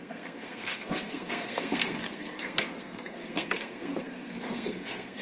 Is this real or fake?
fake